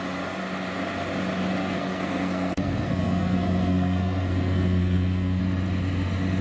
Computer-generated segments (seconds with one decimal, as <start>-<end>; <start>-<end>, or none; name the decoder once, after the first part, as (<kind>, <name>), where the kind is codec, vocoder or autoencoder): 1.6-5.4 (codec, SNAC)

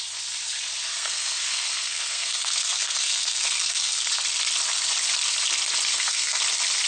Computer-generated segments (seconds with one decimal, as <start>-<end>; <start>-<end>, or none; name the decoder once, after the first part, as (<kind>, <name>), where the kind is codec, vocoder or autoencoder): 0.9-4.1 (codec, SNAC); 5.9-6.4

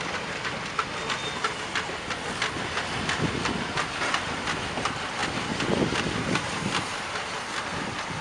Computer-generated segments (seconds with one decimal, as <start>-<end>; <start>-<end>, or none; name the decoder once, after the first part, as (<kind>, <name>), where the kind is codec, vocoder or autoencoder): none

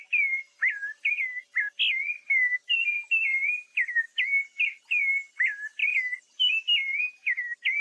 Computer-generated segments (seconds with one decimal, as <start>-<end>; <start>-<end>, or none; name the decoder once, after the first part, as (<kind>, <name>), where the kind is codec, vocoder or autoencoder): none

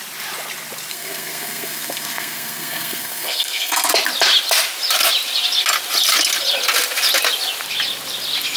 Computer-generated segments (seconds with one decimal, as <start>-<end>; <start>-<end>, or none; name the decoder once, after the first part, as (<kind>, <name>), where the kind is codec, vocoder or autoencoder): 0.9-3.9 (codec, SNAC)